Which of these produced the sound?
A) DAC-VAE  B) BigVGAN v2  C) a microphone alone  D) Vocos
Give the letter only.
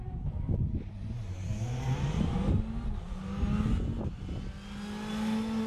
C